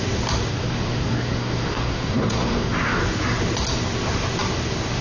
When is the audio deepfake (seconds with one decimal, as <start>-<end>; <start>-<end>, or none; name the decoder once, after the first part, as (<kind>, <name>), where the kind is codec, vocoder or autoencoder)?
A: 0.5-3.0 (codec, SNAC)